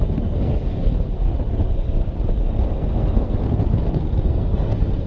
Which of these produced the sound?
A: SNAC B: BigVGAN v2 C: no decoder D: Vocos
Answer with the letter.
A